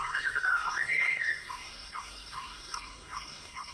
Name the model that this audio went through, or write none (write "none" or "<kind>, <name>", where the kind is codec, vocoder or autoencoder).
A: codec, SNAC